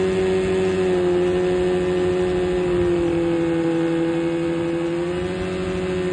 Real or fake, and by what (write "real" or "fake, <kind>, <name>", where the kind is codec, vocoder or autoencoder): real